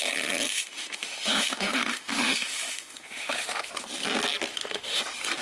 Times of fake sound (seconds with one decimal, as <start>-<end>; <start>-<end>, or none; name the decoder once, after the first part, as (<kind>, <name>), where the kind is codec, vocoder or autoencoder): 0.5-3.7 (autoencoder, DAC-VAE); 4.5-5.0